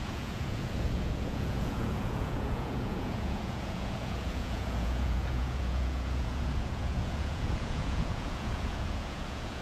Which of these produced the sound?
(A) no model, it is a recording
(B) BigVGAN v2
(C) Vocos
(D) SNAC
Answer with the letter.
C